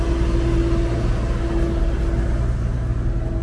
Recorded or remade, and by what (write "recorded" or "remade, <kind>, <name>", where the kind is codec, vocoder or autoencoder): recorded